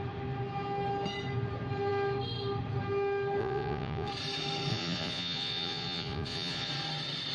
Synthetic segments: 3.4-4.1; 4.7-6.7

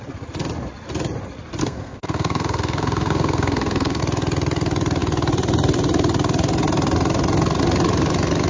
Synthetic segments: 1.6-4.0

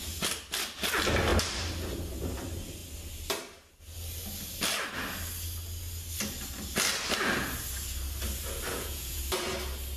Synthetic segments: 8.7-9.2

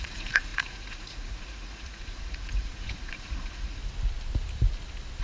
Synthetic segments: 0.0-3.8

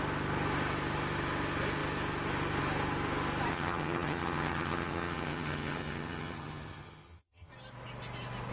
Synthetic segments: 3.5-7.5

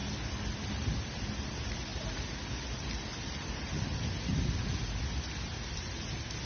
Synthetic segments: none